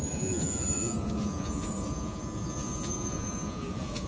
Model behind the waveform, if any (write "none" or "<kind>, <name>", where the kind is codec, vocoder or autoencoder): vocoder, Vocos